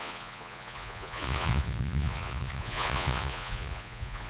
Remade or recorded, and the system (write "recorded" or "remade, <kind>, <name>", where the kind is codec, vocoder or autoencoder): remade, vocoder, Vocos